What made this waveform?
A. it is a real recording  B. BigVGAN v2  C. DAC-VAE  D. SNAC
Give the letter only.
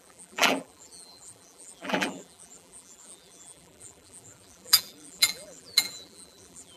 B